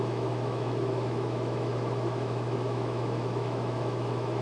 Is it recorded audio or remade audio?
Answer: remade